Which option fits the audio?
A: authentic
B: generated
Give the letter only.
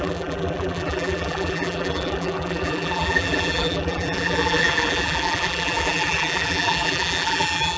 B